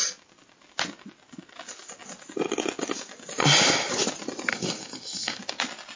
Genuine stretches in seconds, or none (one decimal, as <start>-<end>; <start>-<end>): 0.0-4.5; 5.4-6.0